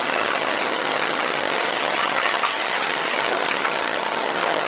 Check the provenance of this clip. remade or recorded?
remade